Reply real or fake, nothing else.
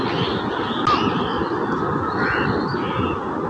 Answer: real